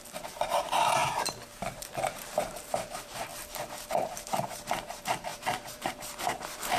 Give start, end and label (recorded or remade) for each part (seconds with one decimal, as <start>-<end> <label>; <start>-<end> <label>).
0.0-3.3 remade; 3.3-3.9 recorded; 3.9-6.8 remade